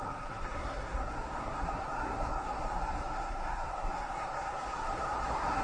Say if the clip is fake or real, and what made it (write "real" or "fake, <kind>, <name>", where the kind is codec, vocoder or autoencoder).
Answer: fake, codec, SNAC